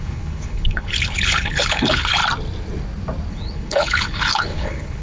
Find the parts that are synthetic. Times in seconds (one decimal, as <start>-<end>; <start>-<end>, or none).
0.0-2.2; 3.3-5.0